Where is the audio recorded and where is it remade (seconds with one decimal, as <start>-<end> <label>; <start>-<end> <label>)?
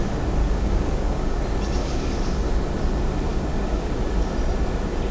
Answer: 0.0-0.4 recorded; 0.4-1.4 remade; 1.4-1.8 recorded; 1.8-2.5 remade; 2.5-3.3 recorded; 3.3-3.9 remade; 3.9-5.1 recorded